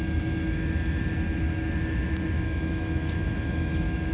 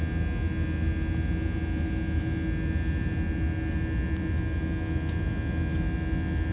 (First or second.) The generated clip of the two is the first